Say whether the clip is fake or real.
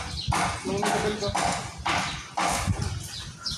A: real